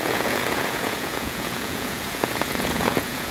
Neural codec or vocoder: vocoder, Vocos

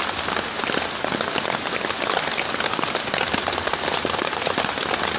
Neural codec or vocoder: none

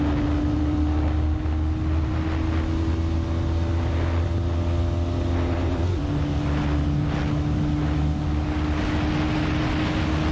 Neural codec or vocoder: none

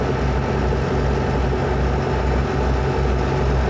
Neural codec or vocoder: none